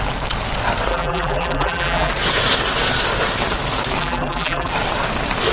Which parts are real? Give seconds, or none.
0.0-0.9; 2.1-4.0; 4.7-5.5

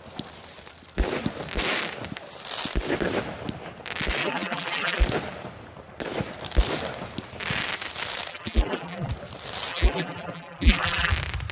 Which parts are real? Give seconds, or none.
0.0-4.2; 5.0-8.3; 9.1-9.7; 11.1-11.5